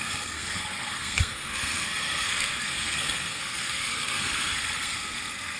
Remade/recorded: remade